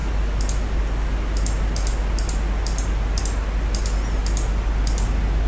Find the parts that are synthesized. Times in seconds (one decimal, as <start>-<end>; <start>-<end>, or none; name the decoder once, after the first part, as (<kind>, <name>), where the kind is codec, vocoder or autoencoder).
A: none